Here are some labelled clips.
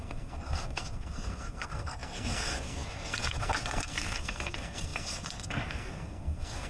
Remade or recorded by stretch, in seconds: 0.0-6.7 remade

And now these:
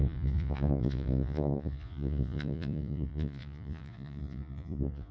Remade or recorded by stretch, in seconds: 0.0-5.1 remade

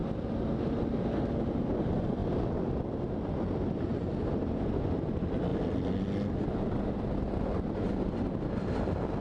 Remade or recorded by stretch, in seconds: 0.0-9.2 recorded

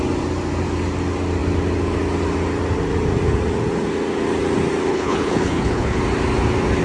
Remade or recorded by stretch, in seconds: 0.0-4.9 recorded; 4.9-6.0 remade; 6.0-6.8 recorded